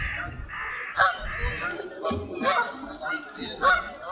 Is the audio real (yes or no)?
yes